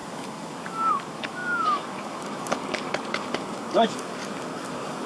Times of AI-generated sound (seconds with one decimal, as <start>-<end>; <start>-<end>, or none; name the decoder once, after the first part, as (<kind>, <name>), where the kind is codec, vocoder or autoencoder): 0.0-5.1 (codec, DAC)